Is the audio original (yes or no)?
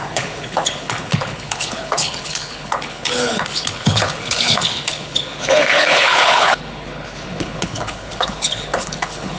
no